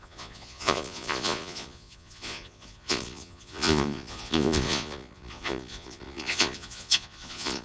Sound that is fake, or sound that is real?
fake